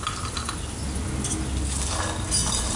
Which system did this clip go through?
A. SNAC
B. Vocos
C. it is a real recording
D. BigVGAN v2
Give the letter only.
C